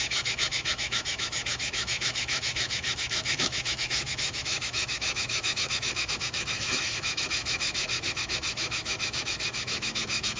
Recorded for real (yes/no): no